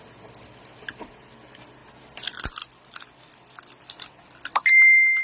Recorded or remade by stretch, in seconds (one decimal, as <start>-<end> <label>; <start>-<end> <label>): 0.0-5.2 recorded